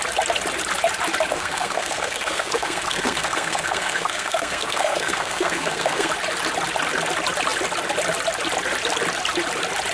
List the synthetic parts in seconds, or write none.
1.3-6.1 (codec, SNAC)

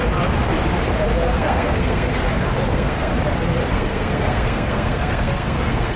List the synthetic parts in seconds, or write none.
1.3-2.1 (codec, SNAC); 2.7-3.1; 3.7-6.0

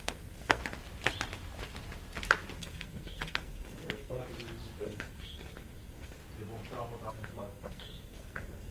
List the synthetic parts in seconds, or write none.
0.0-0.6 (codec, SNAC); 2.6-4.2; 4.8-6.2; 7.1-8.7